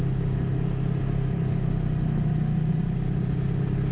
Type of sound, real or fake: real